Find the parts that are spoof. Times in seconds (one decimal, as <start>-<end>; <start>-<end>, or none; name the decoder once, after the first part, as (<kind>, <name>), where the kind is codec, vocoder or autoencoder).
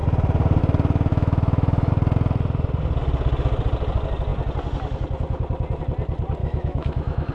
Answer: 1.1-1.9 (autoencoder, DAC-VAE); 6.4-7.3